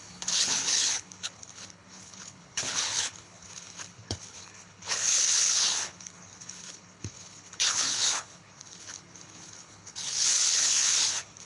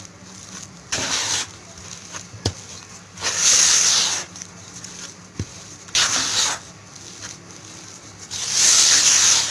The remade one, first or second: first